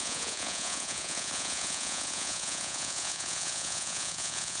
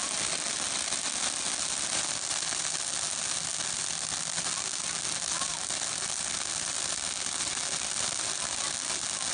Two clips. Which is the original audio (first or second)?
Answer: second